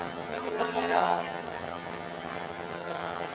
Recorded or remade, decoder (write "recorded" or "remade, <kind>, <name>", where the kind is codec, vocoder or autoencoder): remade, vocoder, HiFi-GAN